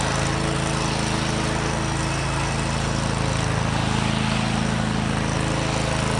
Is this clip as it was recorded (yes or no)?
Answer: yes